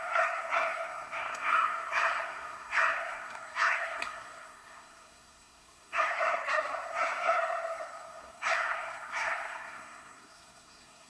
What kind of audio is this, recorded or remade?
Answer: remade